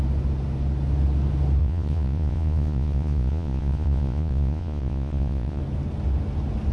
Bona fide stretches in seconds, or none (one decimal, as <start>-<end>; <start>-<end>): 0.0-1.6; 5.6-6.7